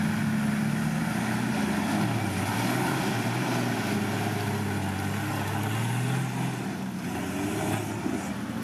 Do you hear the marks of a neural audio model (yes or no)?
no